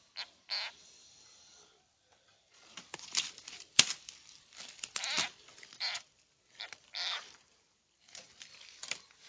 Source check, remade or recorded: remade